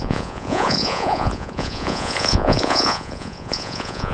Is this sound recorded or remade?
remade